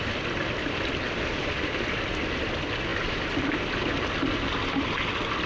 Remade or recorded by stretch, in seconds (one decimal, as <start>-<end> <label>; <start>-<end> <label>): 0.0-5.5 recorded